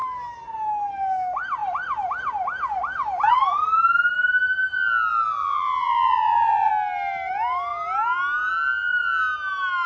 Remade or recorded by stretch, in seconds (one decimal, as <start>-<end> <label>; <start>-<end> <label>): 0.0-5.4 recorded; 5.4-6.7 remade; 6.7-9.9 recorded